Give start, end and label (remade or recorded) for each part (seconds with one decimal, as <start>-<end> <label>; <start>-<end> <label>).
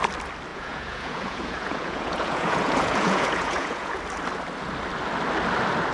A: 0.0-0.5 recorded; 0.5-4.0 remade; 4.0-5.9 recorded